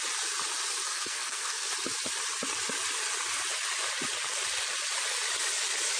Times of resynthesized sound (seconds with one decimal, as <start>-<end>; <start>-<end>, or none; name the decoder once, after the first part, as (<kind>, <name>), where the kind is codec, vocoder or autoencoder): 0.9-1.7 (codec, SNAC)